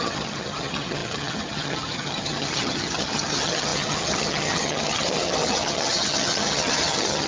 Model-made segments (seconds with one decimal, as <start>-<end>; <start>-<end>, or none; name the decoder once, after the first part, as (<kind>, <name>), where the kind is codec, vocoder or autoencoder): 0.0-7.3 (vocoder, HiFi-GAN)